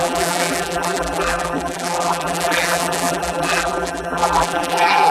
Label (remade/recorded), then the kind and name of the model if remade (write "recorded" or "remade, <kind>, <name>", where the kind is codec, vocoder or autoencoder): remade, vocoder, BigVGAN v2